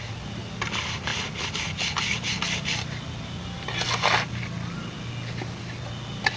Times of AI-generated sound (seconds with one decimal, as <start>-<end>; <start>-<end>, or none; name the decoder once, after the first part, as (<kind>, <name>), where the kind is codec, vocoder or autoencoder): none